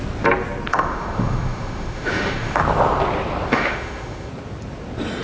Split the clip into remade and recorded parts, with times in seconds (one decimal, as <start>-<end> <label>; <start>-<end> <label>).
0.0-0.7 recorded; 0.7-2.6 remade; 2.6-3.5 recorded; 3.5-4.3 remade; 4.3-5.2 recorded